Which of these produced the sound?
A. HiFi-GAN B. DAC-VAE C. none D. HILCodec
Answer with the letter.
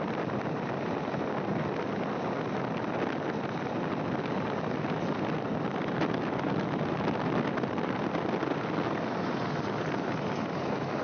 C